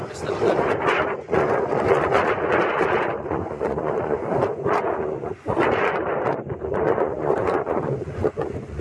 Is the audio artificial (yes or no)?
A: yes